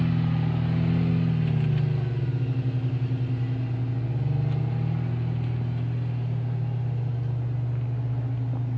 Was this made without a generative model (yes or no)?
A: yes